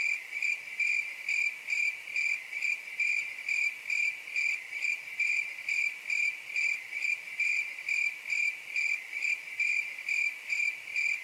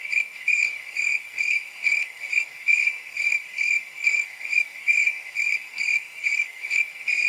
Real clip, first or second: first